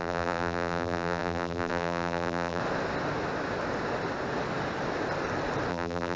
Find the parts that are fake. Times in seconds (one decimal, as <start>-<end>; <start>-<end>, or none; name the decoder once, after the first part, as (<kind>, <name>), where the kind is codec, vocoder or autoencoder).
0.0-2.6 (vocoder, BigVGAN v2); 5.7-6.2